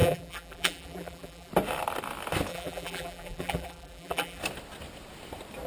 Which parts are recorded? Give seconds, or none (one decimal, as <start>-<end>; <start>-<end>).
1.5-2.5; 4.4-5.7